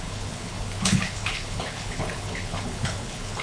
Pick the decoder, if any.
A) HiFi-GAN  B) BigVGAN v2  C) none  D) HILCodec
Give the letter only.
D